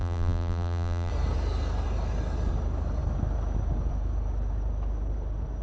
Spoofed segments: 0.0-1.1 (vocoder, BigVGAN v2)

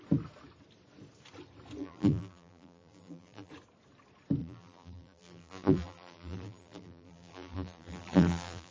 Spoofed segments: 1.8-3.5 (vocoder, BigVGAN v2); 4.4-8.7